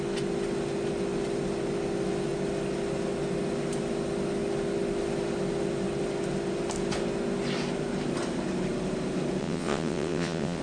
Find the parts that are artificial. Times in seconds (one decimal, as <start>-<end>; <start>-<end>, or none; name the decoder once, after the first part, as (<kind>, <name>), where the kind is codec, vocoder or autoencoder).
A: 9.4-10.6 (vocoder, WaveNeXt)